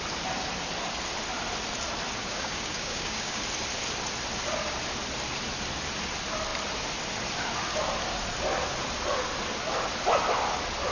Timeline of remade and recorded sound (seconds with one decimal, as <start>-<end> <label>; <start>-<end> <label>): 0.0-2.2 recorded; 2.2-3.4 remade; 3.4-10.9 recorded